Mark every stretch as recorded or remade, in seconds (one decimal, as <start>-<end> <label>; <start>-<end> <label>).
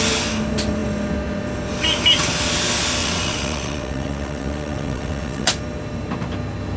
0.0-3.0 recorded; 3.0-5.5 remade; 5.5-6.8 recorded